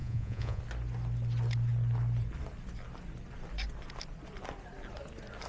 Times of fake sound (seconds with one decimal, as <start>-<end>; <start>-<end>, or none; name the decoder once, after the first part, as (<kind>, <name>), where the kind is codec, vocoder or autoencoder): 0.0-0.6 (vocoder, Vocos)